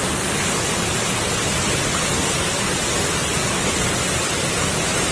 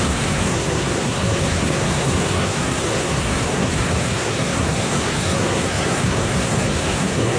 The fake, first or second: second